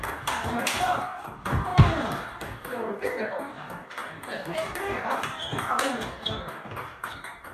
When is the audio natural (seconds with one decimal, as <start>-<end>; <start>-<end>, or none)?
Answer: none